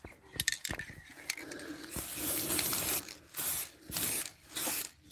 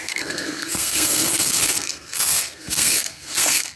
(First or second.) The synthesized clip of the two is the second